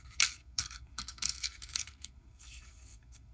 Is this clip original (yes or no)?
no